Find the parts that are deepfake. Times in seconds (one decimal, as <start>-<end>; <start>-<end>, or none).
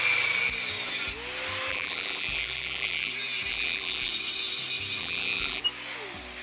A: 1.7-3.1; 3.5-4.1; 5.0-5.6